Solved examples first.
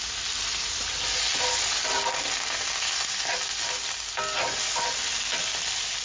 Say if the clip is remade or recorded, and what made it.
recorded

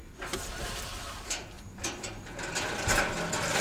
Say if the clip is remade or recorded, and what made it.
remade, vocoder, BigVGAN v2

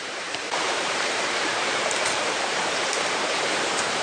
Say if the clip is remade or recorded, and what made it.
remade, vocoder, BigVGAN v2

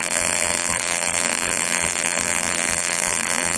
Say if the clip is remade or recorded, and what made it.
remade, vocoder, BigVGAN v2